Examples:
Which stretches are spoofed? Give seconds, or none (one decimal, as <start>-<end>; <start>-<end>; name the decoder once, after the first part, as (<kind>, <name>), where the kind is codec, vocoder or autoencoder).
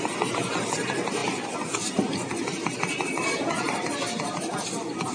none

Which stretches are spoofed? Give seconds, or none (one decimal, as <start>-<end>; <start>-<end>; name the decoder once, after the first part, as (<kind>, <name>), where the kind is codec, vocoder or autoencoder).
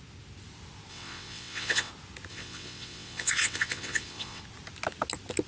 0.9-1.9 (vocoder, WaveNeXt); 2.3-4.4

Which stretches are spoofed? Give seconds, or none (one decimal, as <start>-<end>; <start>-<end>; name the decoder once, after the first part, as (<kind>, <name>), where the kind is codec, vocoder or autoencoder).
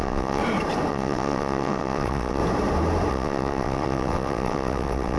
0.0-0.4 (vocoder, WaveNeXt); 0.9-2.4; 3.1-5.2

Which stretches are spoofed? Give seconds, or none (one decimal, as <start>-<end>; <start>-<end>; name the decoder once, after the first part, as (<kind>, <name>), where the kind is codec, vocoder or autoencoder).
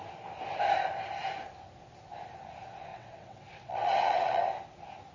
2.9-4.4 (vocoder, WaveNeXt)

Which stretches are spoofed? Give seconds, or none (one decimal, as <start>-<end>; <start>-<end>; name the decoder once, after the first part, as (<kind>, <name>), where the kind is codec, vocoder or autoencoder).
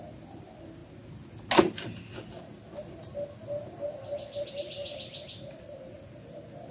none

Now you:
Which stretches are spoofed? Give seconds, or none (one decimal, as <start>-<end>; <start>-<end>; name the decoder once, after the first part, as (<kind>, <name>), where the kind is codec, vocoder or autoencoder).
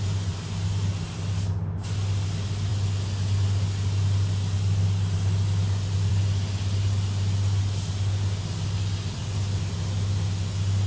none